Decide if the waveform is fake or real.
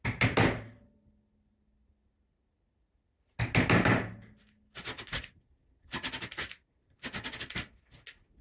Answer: real